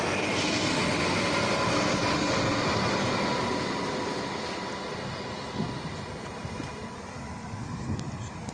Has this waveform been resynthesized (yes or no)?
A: no